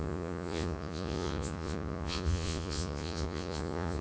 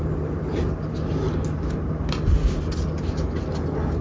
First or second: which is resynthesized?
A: first